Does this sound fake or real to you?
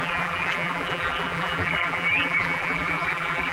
fake